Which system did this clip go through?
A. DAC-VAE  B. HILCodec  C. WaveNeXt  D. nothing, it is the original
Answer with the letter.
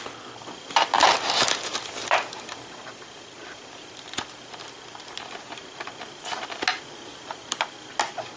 D